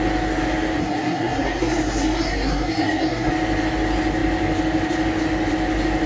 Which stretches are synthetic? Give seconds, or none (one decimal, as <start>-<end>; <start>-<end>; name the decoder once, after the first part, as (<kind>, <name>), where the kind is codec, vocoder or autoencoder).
0.8-3.3 (codec, SNAC)